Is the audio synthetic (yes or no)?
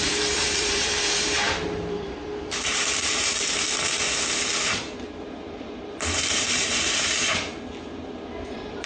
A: yes